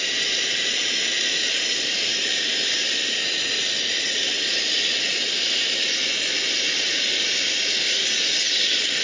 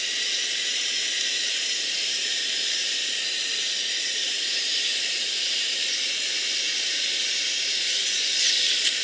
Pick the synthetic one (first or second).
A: second